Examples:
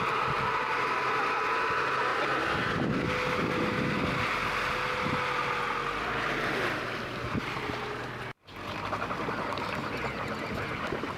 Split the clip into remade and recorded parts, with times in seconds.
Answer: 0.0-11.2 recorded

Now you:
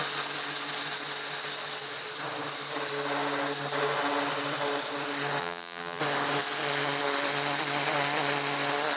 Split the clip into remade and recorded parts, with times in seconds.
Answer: 0.0-5.4 recorded; 5.4-6.0 remade; 6.0-9.0 recorded